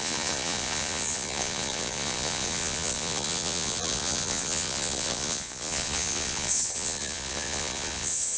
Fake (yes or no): yes